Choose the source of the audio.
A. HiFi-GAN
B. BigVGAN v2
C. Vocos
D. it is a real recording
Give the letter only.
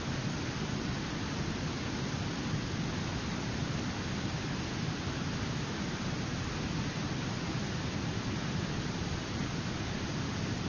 D